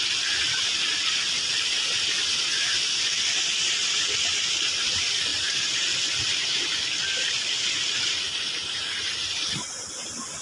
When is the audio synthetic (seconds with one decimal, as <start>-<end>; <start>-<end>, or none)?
none